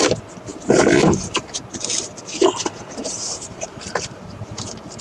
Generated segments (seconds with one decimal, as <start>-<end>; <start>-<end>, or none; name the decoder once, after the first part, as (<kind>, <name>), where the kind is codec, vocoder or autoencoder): 0.5-1.7 (vocoder, BigVGAN v2); 3.0-5.0